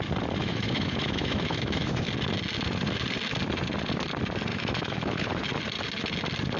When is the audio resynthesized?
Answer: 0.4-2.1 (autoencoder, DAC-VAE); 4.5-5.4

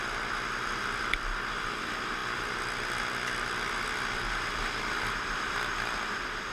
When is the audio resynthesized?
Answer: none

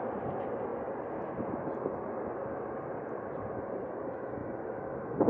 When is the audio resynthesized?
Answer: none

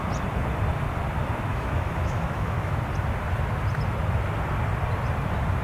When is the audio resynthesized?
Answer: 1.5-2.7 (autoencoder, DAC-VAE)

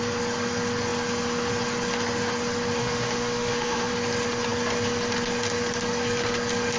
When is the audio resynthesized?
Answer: 2.8-3.9 (autoencoder, DAC-VAE)